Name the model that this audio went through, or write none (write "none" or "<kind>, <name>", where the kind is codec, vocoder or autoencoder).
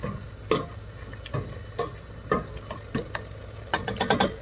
none